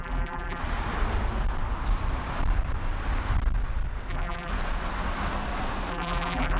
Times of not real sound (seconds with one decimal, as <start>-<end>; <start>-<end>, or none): 0.0-0.6; 4.1-4.5; 5.9-6.6